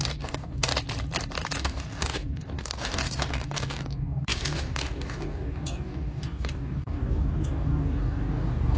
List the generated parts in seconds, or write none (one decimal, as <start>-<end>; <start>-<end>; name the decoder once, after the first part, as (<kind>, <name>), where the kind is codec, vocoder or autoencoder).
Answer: 0.0-0.7 (codec, DAC); 1.6-8.8